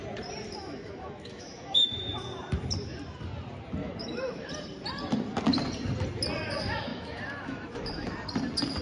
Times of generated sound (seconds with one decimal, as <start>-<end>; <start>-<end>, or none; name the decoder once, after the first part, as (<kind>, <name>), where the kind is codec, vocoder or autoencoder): 0.6-2.1 (autoencoder, DAC-VAE); 3.8-4.5; 6.9-8.1